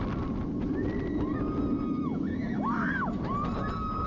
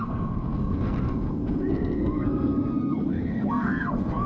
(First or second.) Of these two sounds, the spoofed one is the second